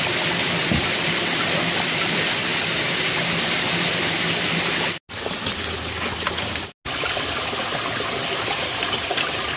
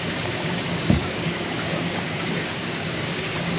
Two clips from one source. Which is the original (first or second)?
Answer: first